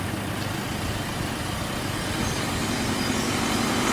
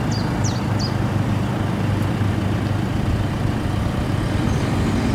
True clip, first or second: second